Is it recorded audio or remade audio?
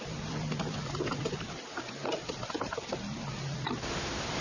remade